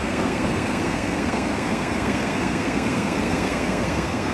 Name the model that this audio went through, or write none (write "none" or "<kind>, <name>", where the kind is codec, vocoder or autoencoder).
codec, SNAC